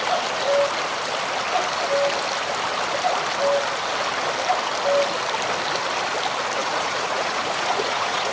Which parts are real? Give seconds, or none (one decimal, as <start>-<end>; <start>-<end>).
0.0-6.6